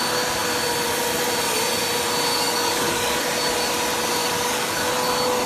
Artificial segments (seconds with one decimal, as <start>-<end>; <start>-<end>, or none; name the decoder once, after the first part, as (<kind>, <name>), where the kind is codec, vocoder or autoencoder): 2.3-3.2 (codec, DAC); 4.2-4.9